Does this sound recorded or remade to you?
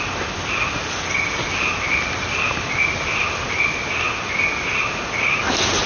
recorded